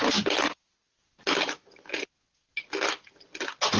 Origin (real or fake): real